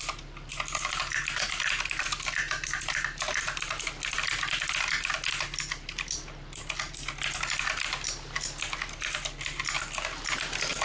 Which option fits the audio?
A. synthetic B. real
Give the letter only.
B